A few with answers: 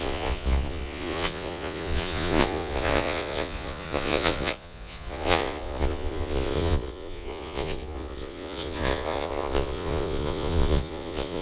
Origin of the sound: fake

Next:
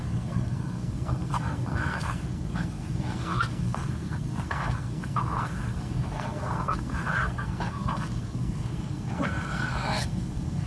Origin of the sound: fake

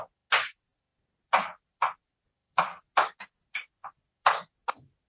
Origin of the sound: real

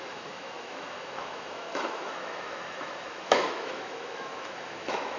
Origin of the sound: fake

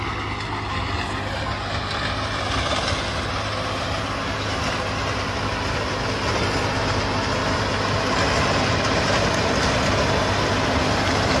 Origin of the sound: real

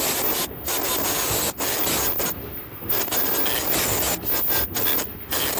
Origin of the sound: real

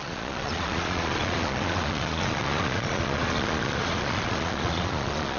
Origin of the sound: fake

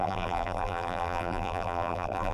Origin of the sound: fake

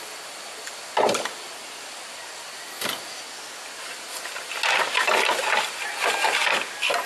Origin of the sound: real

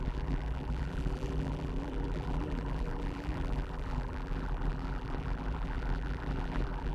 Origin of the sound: fake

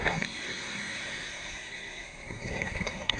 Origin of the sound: fake